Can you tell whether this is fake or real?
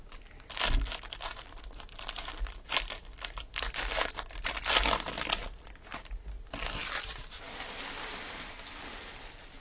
real